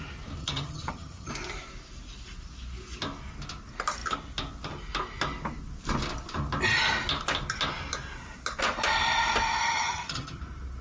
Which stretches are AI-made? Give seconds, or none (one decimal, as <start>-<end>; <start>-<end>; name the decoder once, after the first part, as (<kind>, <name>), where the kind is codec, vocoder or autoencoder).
0.4-1.3 (vocoder, HiFi-GAN); 9.6-10.4